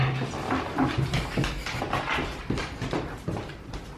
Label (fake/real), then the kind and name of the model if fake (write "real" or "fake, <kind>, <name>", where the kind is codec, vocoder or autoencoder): real